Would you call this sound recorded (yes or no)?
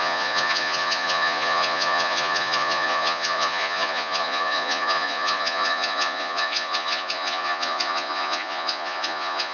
no